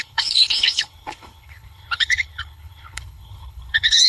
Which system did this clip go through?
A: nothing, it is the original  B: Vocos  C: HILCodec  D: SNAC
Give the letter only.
C